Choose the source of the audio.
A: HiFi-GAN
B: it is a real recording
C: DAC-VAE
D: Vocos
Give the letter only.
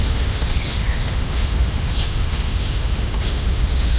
C